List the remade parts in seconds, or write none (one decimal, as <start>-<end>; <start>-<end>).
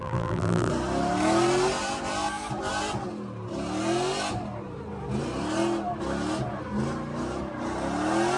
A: 0.0-0.7